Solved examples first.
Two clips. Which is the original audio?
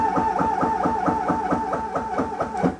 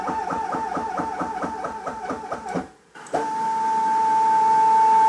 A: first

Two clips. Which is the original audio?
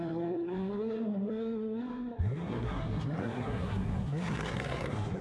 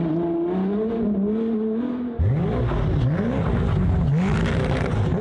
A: second